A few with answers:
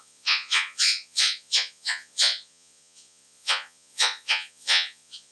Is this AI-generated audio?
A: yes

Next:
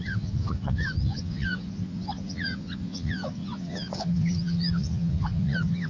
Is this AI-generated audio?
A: yes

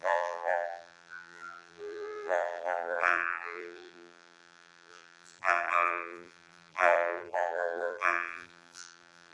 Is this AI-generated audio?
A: yes